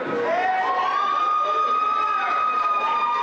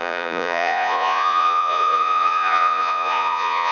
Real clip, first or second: first